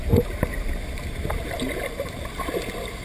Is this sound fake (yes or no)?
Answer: no